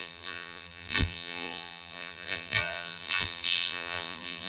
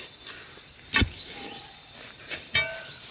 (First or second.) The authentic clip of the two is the second